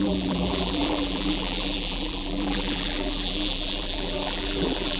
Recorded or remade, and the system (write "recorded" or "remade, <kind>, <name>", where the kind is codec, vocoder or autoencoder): remade, vocoder, BigVGAN v2